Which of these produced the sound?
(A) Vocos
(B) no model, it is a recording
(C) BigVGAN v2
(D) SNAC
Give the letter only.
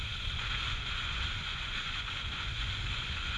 A